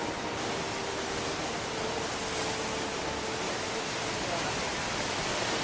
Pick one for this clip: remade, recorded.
recorded